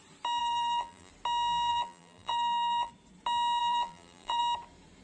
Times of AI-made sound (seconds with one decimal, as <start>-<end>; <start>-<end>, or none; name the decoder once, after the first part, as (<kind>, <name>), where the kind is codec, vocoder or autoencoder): 0.4-1.1 (vocoder, BigVGAN v2); 1.7-2.9; 3.6-4.4